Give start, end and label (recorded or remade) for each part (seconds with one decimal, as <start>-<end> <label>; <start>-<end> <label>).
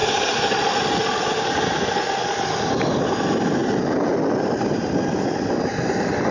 0.0-6.3 recorded